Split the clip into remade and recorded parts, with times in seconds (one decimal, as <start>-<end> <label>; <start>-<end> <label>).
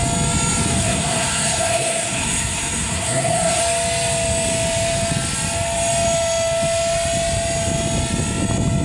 0.0-0.8 recorded; 0.8-3.6 remade; 3.6-8.8 recorded